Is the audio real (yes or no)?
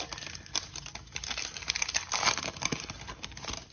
yes